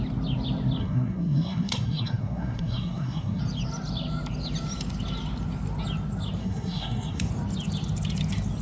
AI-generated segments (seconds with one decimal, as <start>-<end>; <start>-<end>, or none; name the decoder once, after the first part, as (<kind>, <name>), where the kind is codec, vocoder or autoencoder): 0.8-3.4 (codec, SNAC); 6.4-7.3

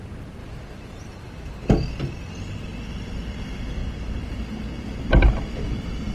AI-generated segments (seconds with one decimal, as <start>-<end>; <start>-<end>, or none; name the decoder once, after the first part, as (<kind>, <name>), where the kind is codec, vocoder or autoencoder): none

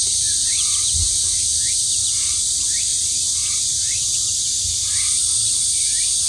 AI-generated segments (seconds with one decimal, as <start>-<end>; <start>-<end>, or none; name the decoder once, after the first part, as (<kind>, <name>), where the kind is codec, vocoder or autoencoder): 0.0-6.3 (vocoder, BigVGAN v2)

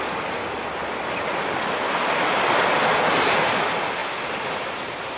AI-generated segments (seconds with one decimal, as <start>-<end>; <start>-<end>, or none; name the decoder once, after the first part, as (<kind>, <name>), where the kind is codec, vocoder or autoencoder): none